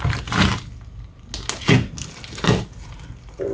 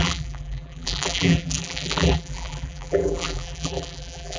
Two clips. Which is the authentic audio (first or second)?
first